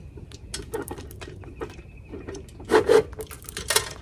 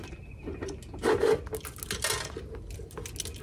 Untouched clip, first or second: second